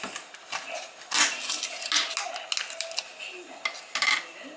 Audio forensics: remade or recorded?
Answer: recorded